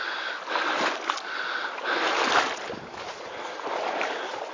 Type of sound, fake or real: real